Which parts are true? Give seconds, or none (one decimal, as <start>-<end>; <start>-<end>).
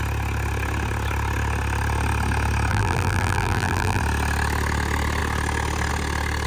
0.0-2.7; 4.0-6.5